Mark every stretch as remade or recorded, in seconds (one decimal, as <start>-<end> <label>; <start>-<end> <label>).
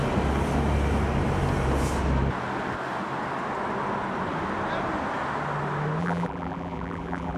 0.0-6.0 recorded; 6.0-7.4 remade